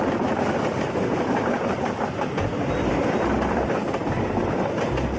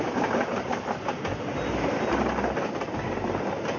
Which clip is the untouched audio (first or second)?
second